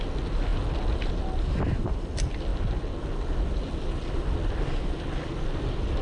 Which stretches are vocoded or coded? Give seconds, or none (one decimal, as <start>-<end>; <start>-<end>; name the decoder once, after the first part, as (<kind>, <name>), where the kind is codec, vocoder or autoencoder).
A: none